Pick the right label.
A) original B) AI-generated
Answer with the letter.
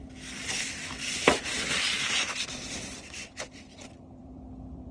B